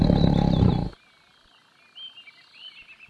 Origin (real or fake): real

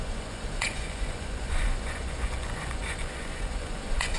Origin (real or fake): fake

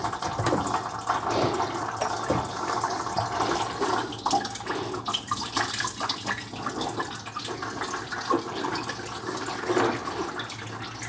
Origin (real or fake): real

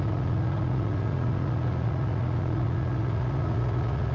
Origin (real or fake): fake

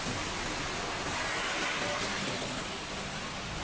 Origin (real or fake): real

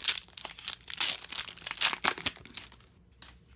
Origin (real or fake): real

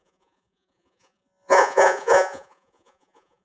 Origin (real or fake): fake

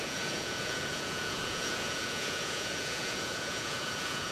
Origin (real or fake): fake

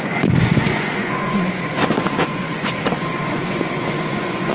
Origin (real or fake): fake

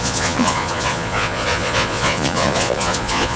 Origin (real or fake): fake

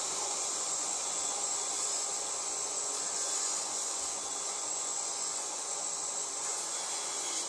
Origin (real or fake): fake